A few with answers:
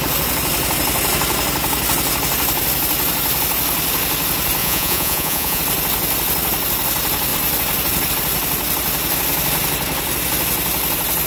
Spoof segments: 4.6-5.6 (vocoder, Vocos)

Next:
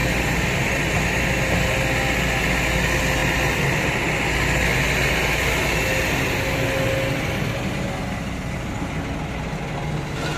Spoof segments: none

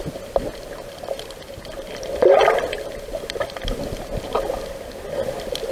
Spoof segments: none

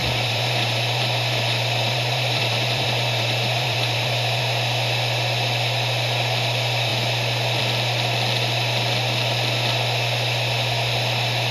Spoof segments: 0.0-4.4 (vocoder, BigVGAN v2)

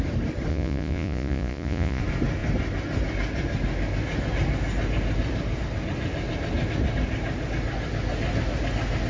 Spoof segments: 0.5-2.0 (vocoder, Vocos)

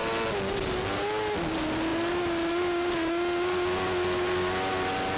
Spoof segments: none